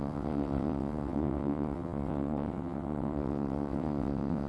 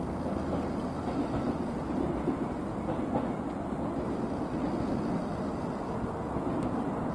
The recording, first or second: second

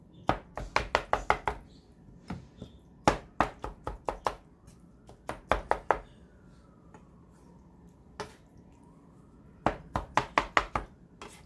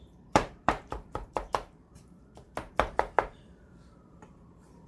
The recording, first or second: first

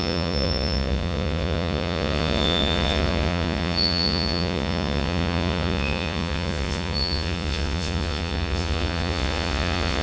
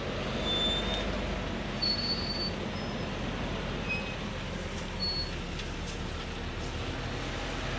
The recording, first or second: second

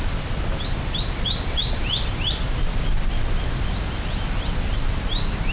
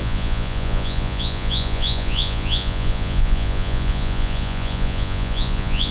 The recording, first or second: first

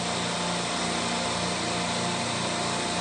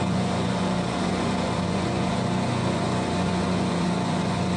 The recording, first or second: first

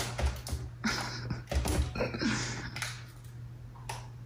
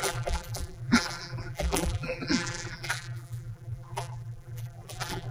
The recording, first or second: first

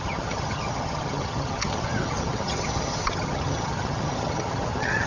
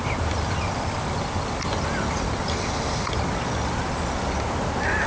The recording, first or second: second